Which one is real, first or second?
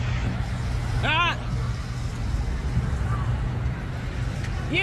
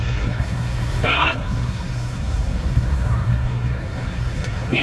first